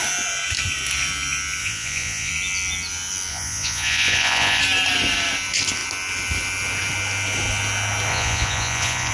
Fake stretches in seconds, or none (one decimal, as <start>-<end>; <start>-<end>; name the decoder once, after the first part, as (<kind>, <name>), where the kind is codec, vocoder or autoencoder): 1.6-2.3 (vocoder, Vocos); 3.3-4.6; 8.1-9.1